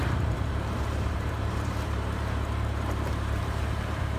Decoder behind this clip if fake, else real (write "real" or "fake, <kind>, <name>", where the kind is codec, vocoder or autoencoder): fake, vocoder, BigVGAN v2